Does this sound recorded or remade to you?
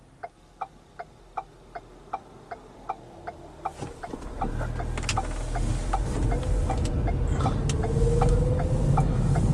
recorded